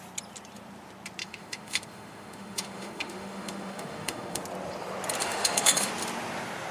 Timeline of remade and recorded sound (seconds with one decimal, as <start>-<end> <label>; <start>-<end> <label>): 0.0-1.2 recorded; 1.2-4.4 remade; 4.4-5.2 recorded; 5.2-5.9 remade; 5.9-6.7 recorded